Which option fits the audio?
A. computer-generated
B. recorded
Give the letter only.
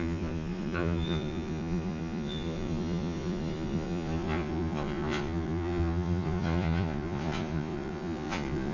A